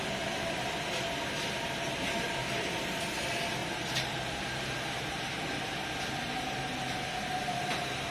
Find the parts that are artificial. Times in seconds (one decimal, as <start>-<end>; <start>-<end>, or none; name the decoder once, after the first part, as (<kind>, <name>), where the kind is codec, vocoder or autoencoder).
2.4-3.0 (vocoder, BigVGAN v2); 3.6-5.6